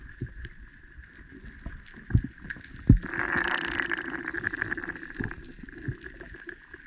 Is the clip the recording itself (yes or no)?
yes